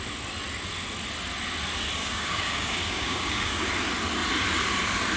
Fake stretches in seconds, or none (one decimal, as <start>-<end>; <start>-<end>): 2.0-3.7